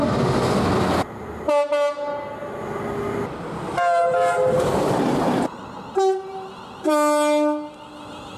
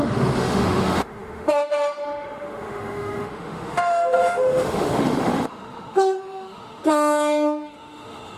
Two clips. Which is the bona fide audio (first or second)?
first